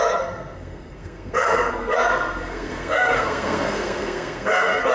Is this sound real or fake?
fake